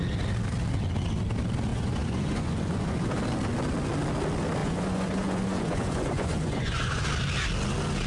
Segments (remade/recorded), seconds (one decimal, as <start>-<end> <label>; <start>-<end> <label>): 0.0-1.7 recorded; 1.7-3.1 remade; 3.1-4.6 recorded; 4.6-7.0 remade; 7.0-8.1 recorded